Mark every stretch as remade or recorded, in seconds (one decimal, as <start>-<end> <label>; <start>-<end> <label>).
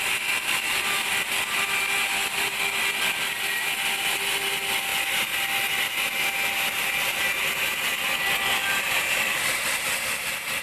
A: 0.0-8.6 recorded; 8.6-10.1 remade; 10.1-10.6 recorded